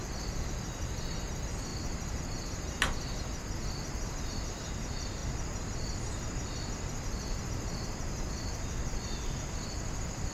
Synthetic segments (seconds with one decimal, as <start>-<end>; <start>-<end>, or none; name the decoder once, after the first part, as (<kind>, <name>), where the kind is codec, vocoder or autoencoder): none